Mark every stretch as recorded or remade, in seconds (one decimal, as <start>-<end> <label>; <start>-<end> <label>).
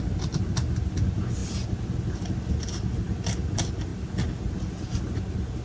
0.0-5.6 recorded